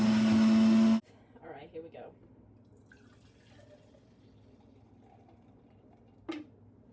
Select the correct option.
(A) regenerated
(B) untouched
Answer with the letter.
B